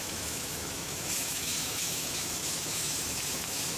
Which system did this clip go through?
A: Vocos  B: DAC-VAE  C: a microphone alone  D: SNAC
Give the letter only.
B